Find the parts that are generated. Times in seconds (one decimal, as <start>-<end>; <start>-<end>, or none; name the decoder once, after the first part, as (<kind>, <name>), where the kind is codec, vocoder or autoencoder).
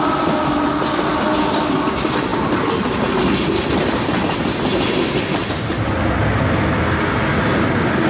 none